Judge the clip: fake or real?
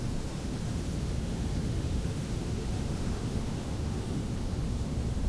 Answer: fake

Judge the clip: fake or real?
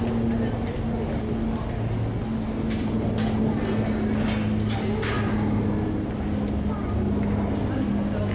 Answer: real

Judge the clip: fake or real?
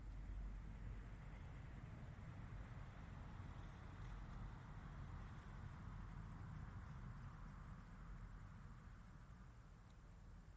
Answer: real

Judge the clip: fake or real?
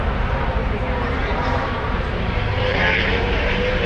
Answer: fake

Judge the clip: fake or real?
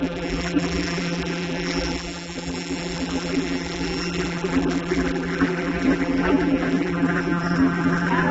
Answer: fake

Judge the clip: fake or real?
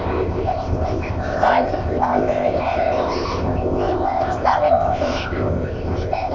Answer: fake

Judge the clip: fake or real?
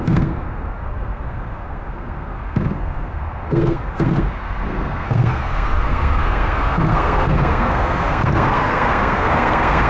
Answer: fake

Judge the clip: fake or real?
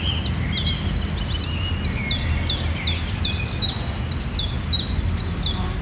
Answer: real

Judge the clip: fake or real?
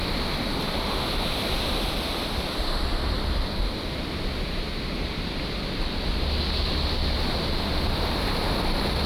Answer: real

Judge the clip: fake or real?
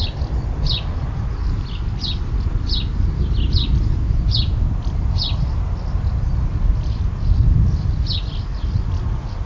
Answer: real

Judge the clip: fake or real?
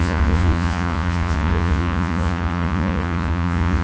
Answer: fake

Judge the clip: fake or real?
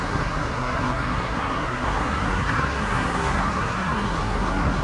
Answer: fake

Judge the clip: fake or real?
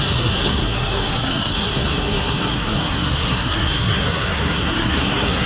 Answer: fake